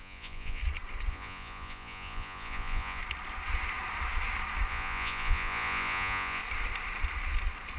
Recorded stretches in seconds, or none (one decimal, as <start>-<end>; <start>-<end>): 0.6-1.1; 3.0-4.7; 6.4-7.8